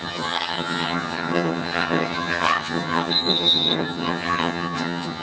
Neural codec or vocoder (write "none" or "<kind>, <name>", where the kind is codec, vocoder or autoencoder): vocoder, HiFi-GAN